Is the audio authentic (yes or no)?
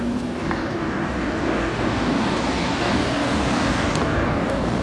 no